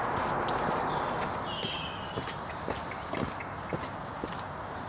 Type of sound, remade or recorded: recorded